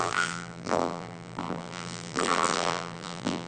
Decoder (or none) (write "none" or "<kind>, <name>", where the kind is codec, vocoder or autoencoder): vocoder, BigVGAN v2